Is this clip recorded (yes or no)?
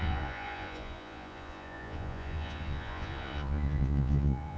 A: no